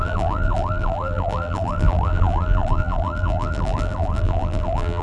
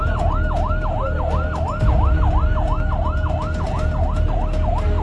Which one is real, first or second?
second